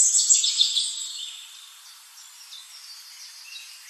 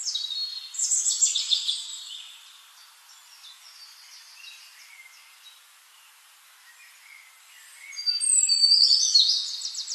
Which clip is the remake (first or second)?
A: first